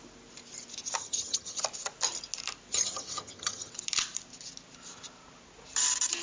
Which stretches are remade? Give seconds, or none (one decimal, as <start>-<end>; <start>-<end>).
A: 1.0-1.6; 2.7-3.7